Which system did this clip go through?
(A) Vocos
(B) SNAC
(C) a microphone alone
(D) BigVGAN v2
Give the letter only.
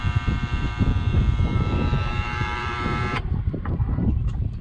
D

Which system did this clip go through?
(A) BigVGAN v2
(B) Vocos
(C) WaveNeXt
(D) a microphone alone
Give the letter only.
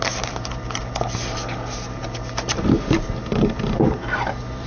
A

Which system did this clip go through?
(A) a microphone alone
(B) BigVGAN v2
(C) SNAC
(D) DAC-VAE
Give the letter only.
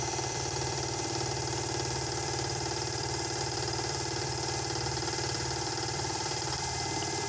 B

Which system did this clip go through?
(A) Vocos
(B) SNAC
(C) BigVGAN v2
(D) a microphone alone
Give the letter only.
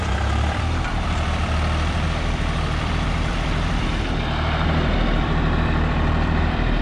C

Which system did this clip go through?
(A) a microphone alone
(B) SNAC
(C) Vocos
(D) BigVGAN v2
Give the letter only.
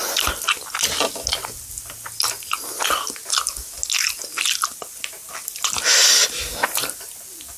A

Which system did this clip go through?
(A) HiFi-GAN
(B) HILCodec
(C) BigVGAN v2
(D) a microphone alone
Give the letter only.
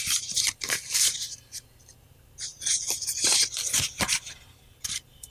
C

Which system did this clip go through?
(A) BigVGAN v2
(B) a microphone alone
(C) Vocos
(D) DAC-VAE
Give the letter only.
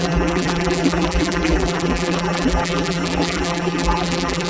A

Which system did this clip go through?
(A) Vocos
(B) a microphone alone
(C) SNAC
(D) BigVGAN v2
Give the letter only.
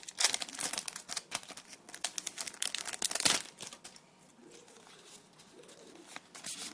B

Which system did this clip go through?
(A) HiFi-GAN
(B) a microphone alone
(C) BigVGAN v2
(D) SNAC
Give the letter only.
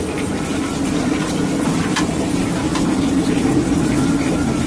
B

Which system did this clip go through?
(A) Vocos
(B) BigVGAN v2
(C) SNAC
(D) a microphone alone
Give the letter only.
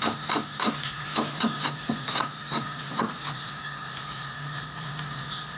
D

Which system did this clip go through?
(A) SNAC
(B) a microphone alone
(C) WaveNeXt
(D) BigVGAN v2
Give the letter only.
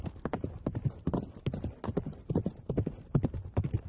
B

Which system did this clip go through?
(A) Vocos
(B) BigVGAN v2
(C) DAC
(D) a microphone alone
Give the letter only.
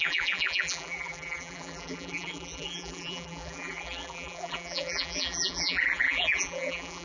B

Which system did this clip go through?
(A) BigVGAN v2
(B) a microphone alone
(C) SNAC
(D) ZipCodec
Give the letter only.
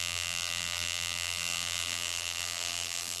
A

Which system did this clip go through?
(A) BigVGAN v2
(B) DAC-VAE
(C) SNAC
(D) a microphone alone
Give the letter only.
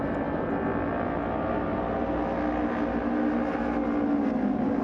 D